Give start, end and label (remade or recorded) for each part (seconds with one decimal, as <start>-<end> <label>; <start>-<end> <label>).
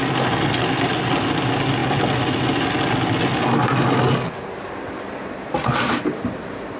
0.0-6.8 recorded